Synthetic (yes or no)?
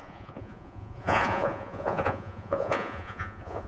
yes